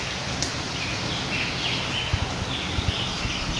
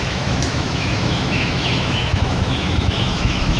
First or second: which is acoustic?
first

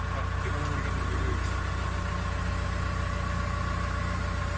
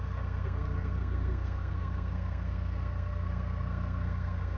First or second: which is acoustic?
first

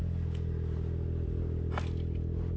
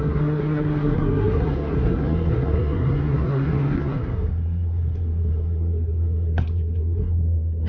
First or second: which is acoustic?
first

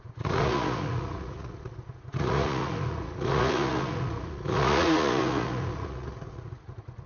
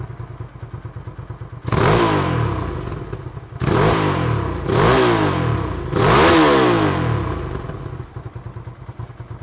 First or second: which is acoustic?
second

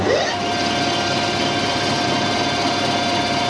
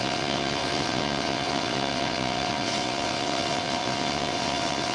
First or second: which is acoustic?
first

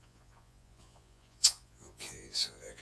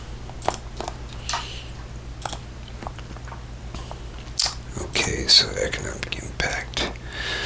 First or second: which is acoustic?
second